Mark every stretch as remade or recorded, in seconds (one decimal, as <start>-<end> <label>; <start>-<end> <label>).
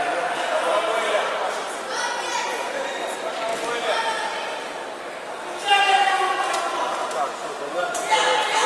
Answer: 0.0-8.7 recorded